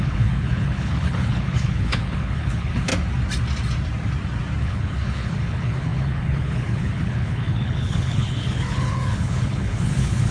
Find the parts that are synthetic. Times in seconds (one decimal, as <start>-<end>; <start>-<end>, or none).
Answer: 0.0-2.9; 4.6-10.3